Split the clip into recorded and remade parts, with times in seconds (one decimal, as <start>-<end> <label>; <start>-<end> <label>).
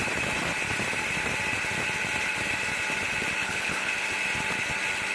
0.0-3.4 recorded; 3.4-3.9 remade; 3.9-5.1 recorded